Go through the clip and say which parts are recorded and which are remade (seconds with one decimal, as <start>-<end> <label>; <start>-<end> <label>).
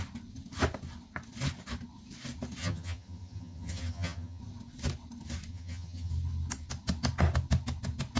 0.0-2.6 recorded; 2.6-4.4 remade; 4.4-5.5 recorded; 5.5-6.1 remade; 6.1-8.2 recorded